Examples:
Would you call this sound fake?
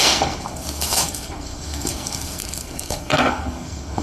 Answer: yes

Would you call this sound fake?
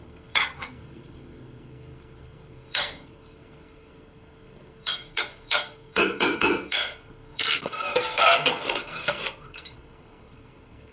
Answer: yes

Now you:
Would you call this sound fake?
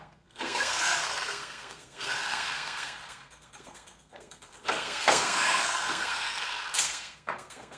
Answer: yes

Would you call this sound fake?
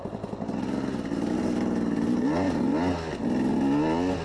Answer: no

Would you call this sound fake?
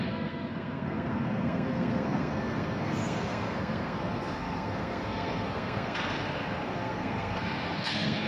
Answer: yes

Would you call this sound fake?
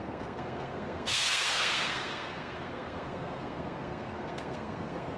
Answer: yes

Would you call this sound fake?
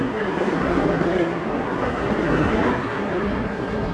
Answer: yes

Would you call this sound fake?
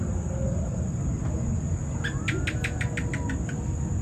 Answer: no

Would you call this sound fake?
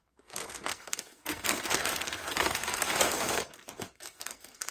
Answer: yes